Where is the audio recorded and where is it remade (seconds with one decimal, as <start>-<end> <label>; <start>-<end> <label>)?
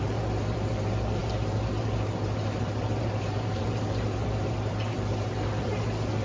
0.0-6.2 remade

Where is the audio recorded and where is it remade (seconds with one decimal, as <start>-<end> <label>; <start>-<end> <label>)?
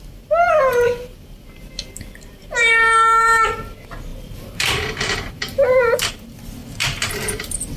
0.0-0.6 recorded; 0.6-1.7 remade; 1.7-4.1 recorded; 4.1-6.1 remade; 6.1-7.8 recorded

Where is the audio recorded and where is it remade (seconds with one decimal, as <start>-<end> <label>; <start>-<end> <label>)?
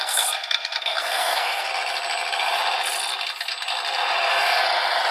0.0-1.7 remade; 1.7-5.1 recorded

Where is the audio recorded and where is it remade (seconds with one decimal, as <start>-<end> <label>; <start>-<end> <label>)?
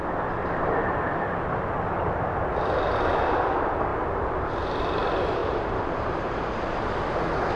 0.0-0.8 recorded; 0.8-1.5 remade; 1.5-3.9 recorded; 3.9-4.5 remade; 4.5-5.4 recorded; 5.4-6.4 remade; 6.4-7.6 recorded